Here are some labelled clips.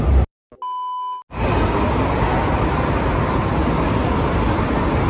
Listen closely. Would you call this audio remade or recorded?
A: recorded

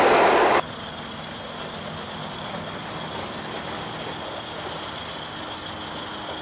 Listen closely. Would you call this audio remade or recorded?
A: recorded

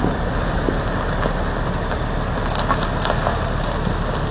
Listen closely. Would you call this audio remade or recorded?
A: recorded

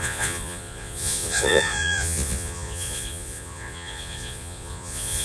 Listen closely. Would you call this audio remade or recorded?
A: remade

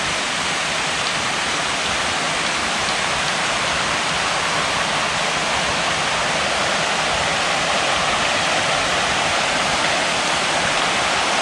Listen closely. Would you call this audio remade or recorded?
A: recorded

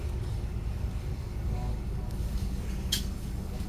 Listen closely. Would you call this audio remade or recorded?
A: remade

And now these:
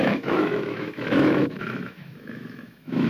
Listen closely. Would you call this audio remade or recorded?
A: remade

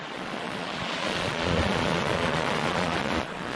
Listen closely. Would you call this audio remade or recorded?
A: remade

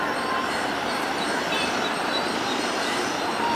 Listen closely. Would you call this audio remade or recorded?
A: remade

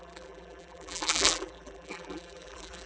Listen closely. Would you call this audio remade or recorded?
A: remade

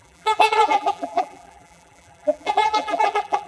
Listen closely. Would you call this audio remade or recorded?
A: remade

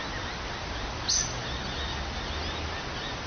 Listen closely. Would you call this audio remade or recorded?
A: recorded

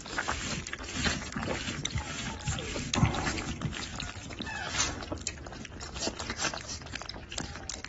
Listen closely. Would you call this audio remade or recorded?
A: recorded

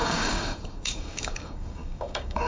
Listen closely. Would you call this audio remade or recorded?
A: remade